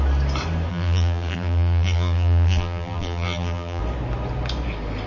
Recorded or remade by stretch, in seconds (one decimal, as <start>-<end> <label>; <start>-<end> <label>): 0.0-0.7 recorded; 0.7-3.8 remade; 3.8-5.1 recorded